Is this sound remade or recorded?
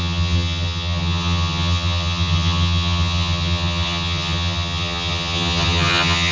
remade